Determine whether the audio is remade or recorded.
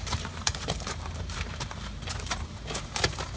remade